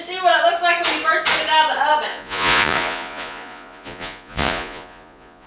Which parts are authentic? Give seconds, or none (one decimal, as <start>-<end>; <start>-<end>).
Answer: 0.0-2.1